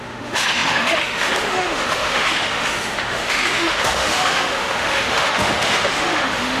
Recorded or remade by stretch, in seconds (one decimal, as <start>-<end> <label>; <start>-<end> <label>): 0.0-6.6 remade